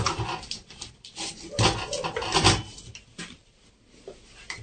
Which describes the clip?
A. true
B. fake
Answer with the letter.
A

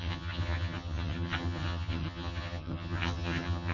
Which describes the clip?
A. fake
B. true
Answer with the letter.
A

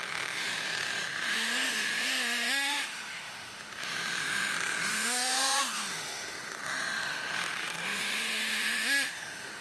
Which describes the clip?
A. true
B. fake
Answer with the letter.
B